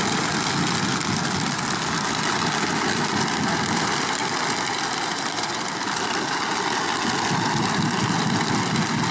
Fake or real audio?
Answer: real